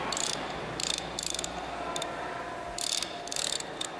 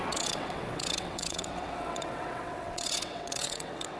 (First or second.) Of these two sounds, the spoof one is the second